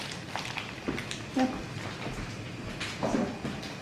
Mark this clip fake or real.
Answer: real